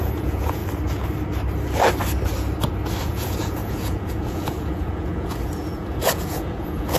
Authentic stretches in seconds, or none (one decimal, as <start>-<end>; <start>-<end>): 0.6-3.0